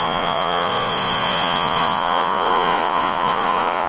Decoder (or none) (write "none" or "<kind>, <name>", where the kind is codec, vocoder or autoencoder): vocoder, Vocos